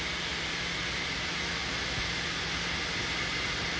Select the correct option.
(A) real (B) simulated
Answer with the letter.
A